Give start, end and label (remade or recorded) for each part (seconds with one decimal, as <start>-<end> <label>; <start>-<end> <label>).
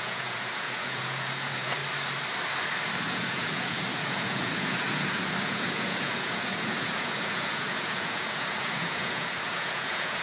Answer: 0.0-1.8 remade; 1.8-3.1 recorded; 3.1-10.2 remade